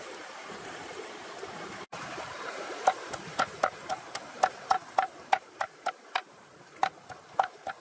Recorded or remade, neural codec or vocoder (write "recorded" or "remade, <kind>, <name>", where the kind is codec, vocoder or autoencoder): remade, vocoder, BigVGAN v2